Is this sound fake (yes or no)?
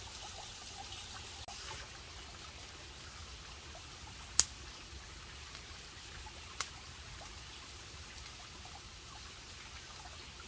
no